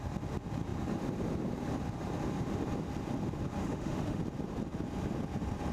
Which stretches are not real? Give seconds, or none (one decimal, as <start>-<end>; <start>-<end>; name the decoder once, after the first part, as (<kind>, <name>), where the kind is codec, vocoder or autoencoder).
3.6-4.2 (autoencoder, DAC-VAE)